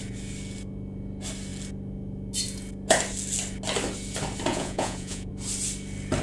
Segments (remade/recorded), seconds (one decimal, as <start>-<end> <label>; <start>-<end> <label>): 0.0-4.5 recorded; 4.5-5.3 remade; 5.3-6.2 recorded

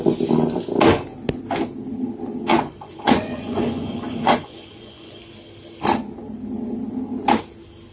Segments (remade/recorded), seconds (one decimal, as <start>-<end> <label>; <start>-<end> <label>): 0.0-2.5 recorded; 2.5-5.2 remade; 5.2-7.9 recorded

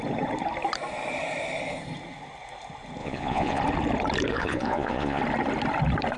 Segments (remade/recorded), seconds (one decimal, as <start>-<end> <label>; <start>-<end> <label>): 0.0-3.0 recorded; 3.0-3.6 remade; 3.6-4.3 recorded; 4.3-5.2 remade; 5.2-6.2 recorded

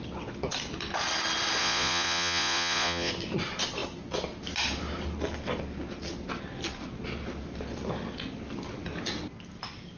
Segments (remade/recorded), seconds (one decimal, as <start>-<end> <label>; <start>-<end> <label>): 0.0-1.6 recorded; 1.6-3.1 remade; 3.1-10.0 recorded

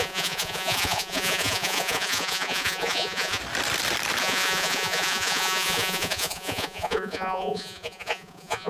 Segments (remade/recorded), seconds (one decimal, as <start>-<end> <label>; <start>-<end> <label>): 0.0-3.4 remade; 3.4-4.2 recorded; 4.2-8.7 remade

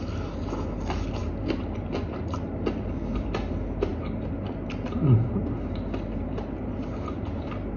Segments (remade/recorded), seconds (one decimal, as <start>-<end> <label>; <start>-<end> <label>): 0.0-7.8 recorded

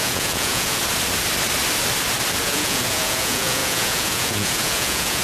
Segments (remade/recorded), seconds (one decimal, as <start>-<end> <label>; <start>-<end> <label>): 0.0-0.8 remade; 0.8-2.4 recorded; 2.4-5.2 remade